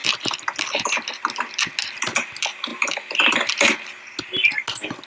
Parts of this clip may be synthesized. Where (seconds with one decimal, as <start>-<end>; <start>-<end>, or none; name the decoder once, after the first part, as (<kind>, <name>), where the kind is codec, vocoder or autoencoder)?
none